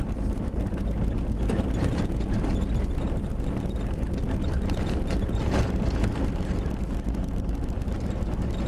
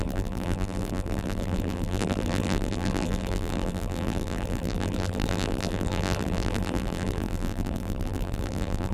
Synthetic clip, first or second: second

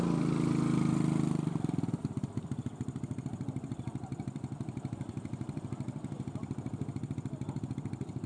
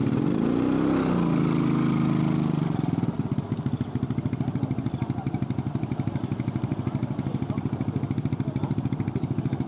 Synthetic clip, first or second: first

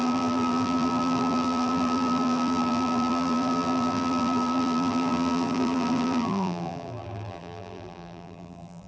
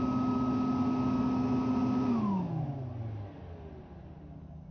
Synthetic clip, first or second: first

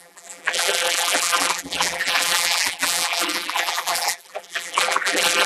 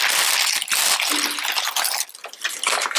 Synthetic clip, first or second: first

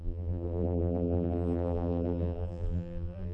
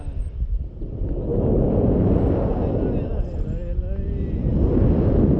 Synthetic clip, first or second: first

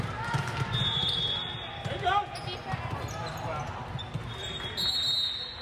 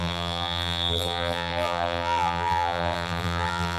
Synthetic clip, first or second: second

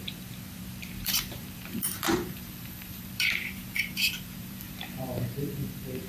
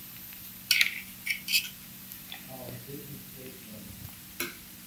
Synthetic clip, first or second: first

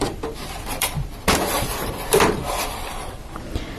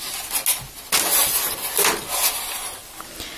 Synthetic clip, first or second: first